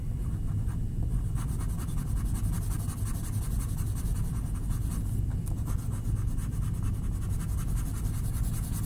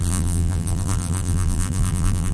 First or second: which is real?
first